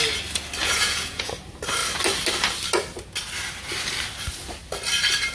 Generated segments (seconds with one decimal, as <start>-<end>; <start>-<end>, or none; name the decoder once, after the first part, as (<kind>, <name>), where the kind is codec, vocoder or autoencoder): 0.6-1.3 (vocoder, Vocos)